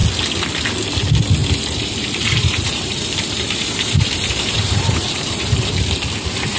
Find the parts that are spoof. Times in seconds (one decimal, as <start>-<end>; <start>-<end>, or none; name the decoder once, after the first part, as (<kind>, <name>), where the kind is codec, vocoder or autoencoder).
1.4-5.4 (vocoder, BigVGAN v2)